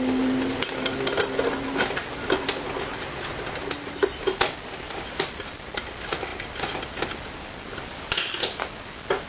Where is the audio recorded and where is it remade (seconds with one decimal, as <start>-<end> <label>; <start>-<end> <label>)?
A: 0.0-9.3 recorded